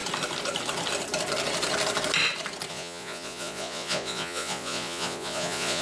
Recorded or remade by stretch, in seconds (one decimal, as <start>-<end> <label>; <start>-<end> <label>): 0.0-2.7 recorded; 2.7-5.8 remade